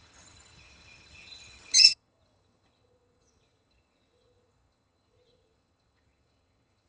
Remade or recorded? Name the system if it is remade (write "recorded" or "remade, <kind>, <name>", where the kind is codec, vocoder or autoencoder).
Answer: remade, vocoder, HiFi-GAN